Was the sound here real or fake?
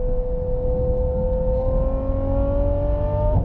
real